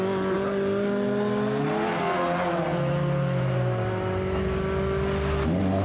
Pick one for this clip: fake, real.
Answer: real